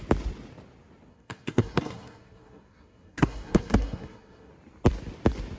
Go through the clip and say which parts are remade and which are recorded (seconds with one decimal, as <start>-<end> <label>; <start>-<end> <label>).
0.0-1.1 recorded; 1.1-4.5 remade; 4.5-5.6 recorded